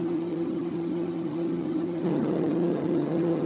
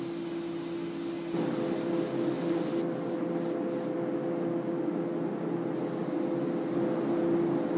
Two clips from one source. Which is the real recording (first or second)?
second